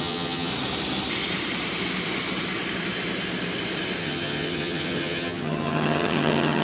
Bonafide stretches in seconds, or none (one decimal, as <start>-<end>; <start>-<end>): 0.5-4.0